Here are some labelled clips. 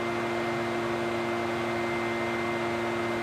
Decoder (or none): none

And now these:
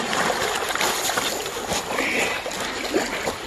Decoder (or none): none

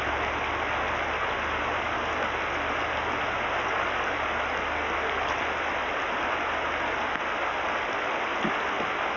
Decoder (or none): none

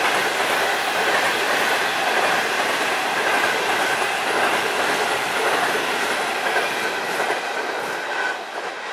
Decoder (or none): none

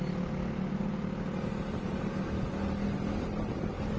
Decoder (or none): none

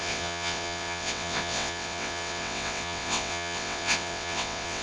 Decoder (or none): vocoder, WaveNeXt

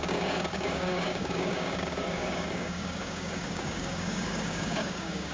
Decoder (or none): codec, DAC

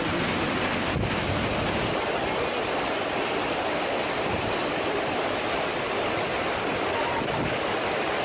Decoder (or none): none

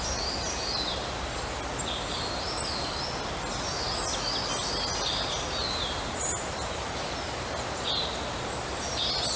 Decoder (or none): none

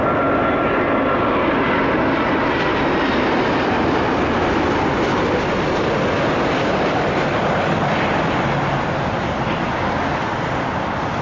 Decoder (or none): none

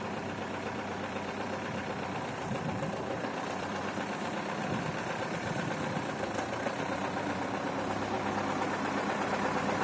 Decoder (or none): vocoder, BigVGAN v2